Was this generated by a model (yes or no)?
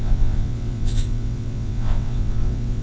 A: yes